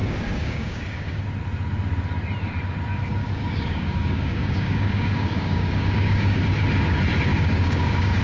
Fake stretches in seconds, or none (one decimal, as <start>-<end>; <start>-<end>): 0.0-1.2; 3.2-6.4; 7.3-8.2